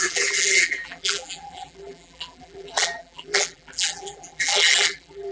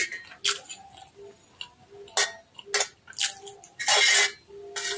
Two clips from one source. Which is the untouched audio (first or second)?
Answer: second